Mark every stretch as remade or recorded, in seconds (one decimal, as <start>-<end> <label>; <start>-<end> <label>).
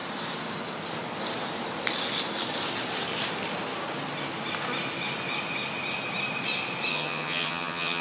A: 0.0-6.9 recorded; 6.9-8.0 remade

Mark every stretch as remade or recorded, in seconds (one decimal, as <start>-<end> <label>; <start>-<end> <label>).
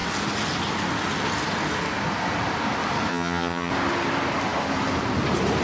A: 0.0-3.1 recorded; 3.1-3.7 remade; 3.7-5.6 recorded